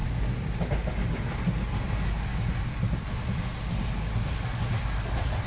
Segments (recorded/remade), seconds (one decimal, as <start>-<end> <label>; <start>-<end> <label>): 0.0-5.5 recorded